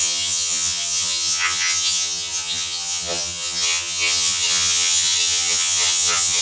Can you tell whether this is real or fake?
fake